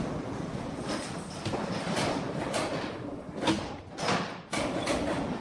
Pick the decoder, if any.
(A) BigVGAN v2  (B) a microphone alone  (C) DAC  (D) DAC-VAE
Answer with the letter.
B